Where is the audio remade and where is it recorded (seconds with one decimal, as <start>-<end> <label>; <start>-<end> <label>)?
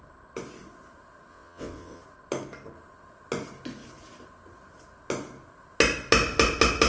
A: 0.0-1.3 recorded; 1.3-2.0 remade; 2.0-6.9 recorded